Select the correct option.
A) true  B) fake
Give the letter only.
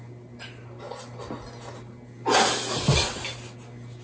A